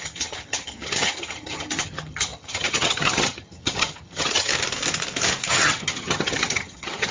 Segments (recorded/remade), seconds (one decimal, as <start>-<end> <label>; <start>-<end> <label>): 0.0-4.5 remade; 4.5-5.5 recorded; 5.5-7.1 remade